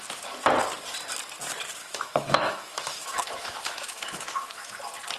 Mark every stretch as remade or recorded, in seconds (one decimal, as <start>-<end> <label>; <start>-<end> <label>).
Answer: 0.0-1.8 recorded; 1.8-4.7 remade; 4.7-5.2 recorded